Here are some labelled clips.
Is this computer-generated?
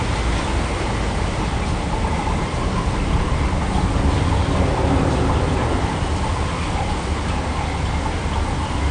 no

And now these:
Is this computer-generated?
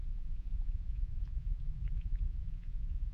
yes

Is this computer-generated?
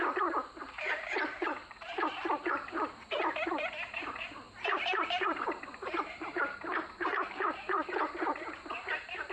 yes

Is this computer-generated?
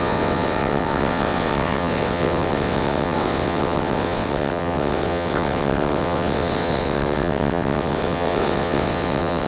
yes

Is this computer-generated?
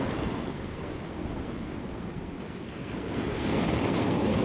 yes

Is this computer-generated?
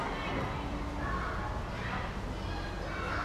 no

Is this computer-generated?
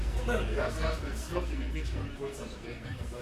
yes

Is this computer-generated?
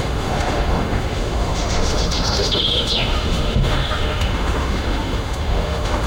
yes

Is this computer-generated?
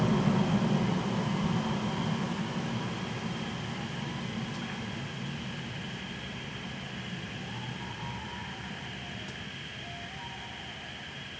no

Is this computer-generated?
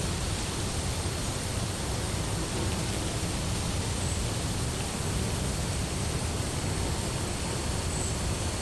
no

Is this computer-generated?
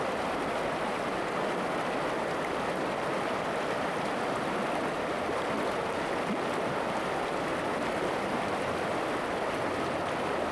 no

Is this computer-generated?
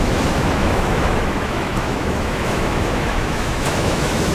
yes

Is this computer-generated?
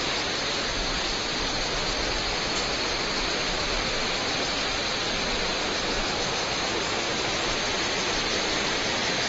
no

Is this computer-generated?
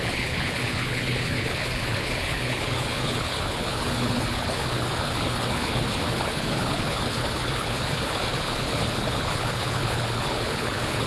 yes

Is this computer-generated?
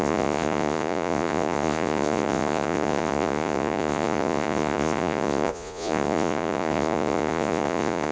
yes